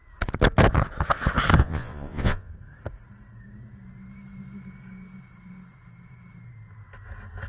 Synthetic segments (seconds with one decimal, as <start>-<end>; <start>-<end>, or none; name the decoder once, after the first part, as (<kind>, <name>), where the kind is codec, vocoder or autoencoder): 1.6-2.5 (vocoder, Vocos)